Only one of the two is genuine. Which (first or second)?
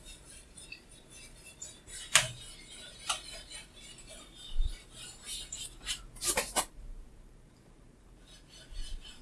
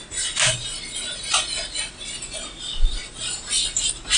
second